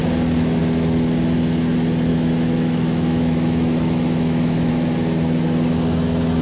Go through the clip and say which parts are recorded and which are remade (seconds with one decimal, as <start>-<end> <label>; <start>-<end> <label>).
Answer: 0.0-2.1 recorded; 2.1-4.7 remade; 4.7-6.4 recorded